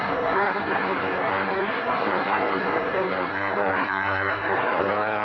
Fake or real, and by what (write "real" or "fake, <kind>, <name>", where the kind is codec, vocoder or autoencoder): fake, codec, SNAC